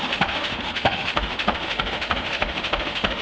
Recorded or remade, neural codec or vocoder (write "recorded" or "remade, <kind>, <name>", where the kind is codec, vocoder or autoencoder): remade, autoencoder, DAC-VAE